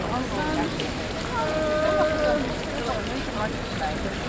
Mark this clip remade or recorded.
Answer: recorded